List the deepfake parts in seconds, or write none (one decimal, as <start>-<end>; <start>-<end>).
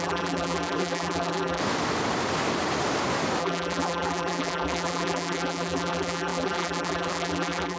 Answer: 0.0-1.6; 3.4-7.8